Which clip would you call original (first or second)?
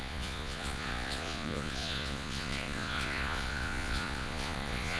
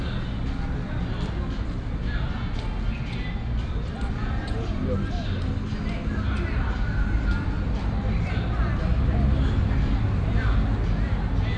second